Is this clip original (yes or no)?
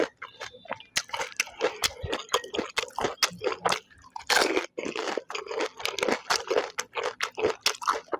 yes